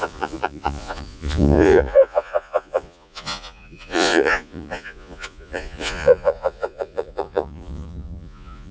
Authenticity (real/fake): fake